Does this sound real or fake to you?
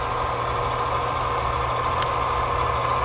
real